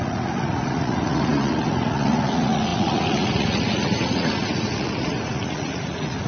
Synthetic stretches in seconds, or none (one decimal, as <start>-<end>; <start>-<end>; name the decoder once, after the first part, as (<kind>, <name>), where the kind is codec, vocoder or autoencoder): 0.0-6.3 (vocoder, Vocos)